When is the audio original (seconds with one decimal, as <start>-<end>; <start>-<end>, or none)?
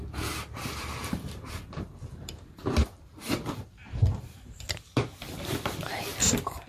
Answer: 0.0-0.6; 4.6-6.7